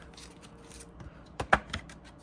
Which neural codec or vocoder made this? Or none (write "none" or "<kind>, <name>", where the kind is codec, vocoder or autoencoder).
none